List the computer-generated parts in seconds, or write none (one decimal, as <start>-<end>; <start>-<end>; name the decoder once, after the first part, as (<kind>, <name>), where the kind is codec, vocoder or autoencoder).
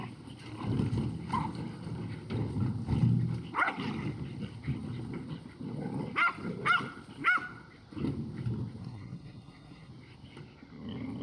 8.8-9.9 (codec, SNAC)